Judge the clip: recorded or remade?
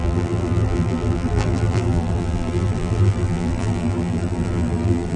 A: remade